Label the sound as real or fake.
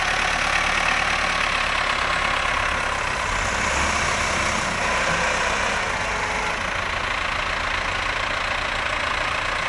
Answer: real